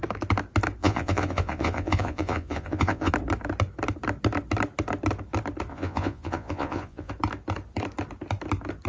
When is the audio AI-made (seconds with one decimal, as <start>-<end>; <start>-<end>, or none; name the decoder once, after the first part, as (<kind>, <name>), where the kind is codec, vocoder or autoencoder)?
0.8-3.1 (vocoder, Vocos); 5.7-7.1